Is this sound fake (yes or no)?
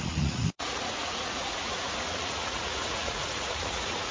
yes